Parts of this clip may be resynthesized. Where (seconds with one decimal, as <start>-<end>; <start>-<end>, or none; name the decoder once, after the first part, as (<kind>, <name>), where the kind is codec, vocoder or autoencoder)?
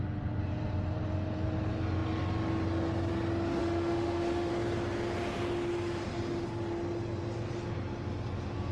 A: 3.6-4.5 (autoencoder, DAC-VAE)